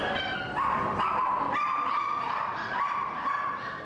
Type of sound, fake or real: fake